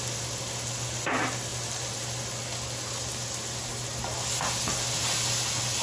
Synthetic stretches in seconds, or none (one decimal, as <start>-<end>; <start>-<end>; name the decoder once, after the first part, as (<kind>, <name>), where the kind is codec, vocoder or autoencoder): none